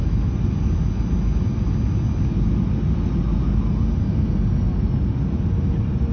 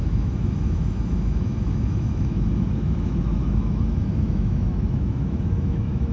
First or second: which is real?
first